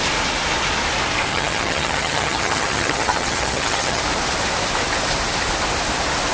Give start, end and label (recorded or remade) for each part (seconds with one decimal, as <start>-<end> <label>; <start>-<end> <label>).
0.0-1.3 recorded; 1.3-4.0 remade; 4.0-6.3 recorded